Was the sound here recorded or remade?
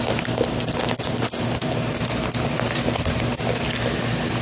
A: recorded